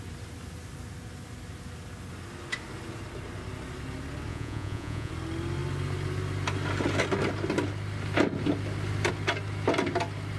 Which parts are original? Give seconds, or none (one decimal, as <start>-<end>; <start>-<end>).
0.0-4.3; 5.1-10.4